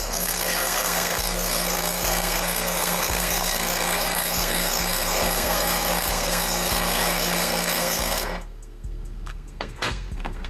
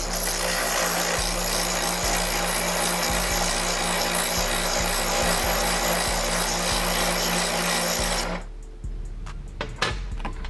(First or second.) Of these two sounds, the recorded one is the second